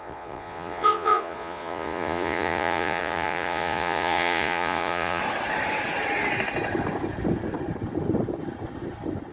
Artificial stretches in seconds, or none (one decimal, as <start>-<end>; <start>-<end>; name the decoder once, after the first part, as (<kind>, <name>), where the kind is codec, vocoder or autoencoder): 0.0-5.2 (vocoder, Vocos)